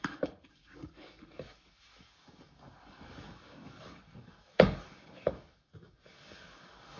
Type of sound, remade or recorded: remade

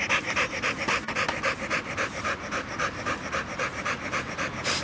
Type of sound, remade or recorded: recorded